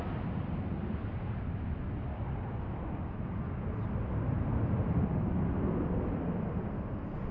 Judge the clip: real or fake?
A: real